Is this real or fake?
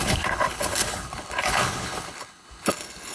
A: fake